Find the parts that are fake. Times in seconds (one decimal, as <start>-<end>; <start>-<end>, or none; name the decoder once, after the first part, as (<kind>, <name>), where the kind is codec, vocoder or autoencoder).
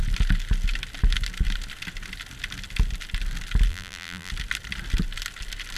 3.7-4.3 (vocoder, BigVGAN v2)